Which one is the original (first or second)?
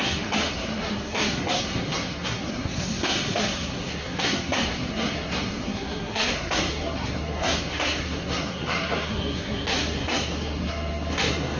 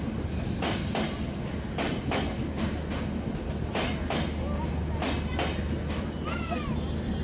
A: second